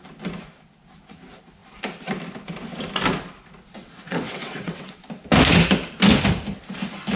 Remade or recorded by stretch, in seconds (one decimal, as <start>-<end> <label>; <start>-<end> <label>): 0.0-3.8 recorded; 3.8-5.0 remade; 5.0-7.2 recorded